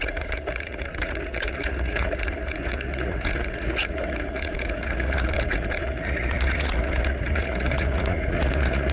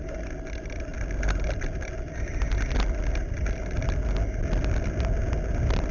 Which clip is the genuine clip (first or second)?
second